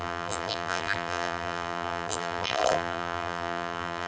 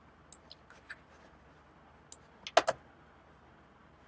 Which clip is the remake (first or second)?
first